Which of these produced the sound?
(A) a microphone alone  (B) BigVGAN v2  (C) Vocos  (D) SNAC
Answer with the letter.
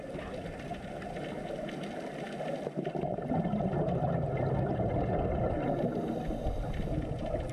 A